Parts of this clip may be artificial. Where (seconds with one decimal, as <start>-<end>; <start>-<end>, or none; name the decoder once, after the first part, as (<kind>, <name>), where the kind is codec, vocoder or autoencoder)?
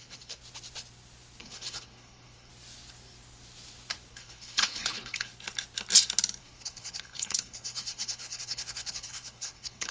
0.0-0.4 (codec, HILCodec); 1.4-2.5; 4.1-5.3; 6.4-9.9